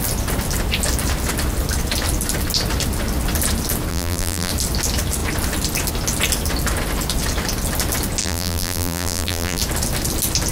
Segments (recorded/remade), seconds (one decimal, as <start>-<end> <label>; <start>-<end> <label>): 0.0-3.9 recorded; 3.9-4.5 remade; 4.5-8.2 recorded; 8.2-9.6 remade; 9.6-10.5 recorded